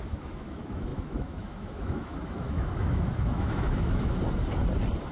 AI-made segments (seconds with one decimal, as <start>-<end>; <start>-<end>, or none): 0.0-4.2

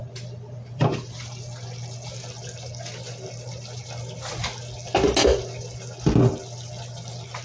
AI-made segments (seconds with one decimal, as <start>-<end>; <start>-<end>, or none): none

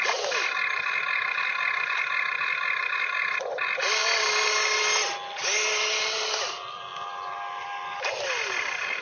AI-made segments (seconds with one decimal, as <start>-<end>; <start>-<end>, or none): 0.0-4.0; 6.0-9.0

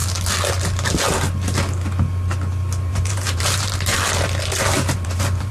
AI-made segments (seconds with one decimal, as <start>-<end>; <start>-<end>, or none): 2.9-3.9; 4.6-5.5

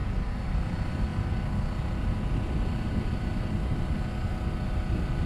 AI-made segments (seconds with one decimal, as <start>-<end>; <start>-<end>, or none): none